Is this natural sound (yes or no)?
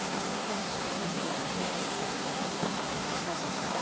no